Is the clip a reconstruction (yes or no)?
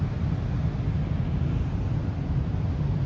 no